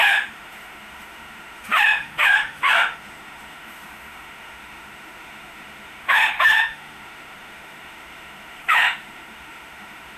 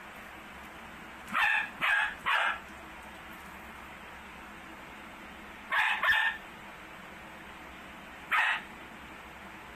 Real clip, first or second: second